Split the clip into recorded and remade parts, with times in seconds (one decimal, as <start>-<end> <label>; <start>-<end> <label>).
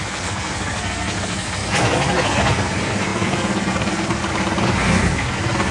0.0-4.2 remade; 4.2-4.8 recorded; 4.8-5.7 remade